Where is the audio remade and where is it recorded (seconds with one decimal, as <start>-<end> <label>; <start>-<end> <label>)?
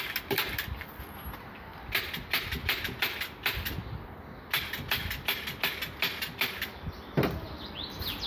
0.0-8.3 recorded